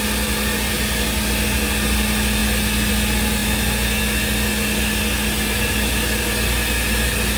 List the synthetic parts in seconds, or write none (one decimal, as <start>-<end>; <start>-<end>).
none